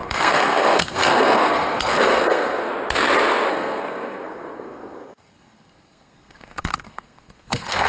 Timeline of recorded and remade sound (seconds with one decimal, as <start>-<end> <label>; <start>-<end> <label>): 0.0-2.7 remade; 2.7-3.5 recorded; 3.5-7.9 remade